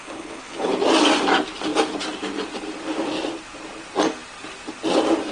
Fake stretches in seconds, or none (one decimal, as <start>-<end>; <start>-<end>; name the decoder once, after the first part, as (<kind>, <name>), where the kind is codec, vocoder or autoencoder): 0.0-0.7 (codec, HILCodec)